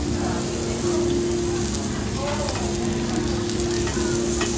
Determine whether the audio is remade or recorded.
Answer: recorded